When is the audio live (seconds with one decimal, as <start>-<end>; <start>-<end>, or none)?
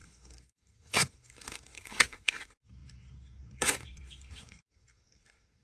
none